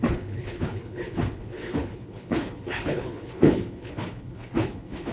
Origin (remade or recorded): remade